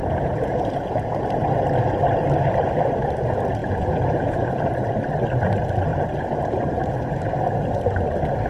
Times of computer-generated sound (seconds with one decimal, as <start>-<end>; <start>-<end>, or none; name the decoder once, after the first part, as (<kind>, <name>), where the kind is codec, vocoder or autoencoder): 0.0-1.1 (vocoder, Vocos); 3.6-4.7; 5.9-7.0